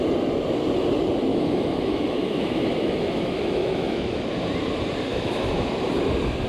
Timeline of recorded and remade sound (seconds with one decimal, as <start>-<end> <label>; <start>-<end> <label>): 0.0-1.3 recorded; 1.3-4.2 remade; 4.2-5.1 recorded; 5.1-5.7 remade; 5.7-6.5 recorded